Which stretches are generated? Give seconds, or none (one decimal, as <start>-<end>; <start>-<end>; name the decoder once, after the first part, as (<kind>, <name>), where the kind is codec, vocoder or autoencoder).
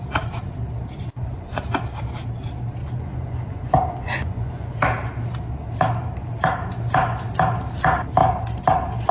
1.1-1.6 (vocoder, Vocos); 2.8-4.8